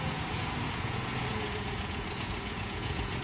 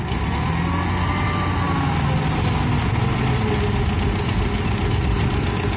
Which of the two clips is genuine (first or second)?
second